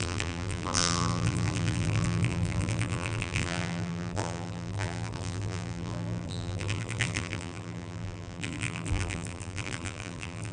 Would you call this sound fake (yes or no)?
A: yes